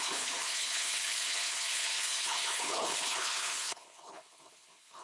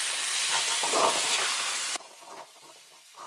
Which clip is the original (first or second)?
second